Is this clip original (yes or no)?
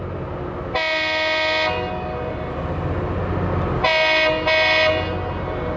yes